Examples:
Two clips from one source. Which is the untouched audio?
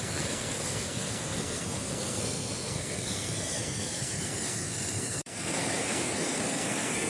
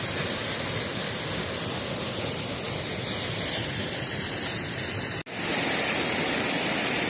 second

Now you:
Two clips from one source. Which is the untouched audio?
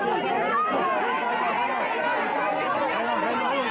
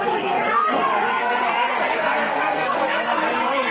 first